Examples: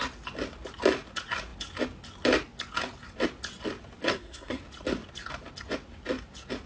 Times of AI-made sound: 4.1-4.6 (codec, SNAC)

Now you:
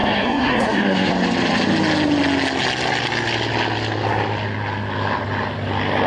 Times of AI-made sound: 0.0-1.1 (codec, SNAC)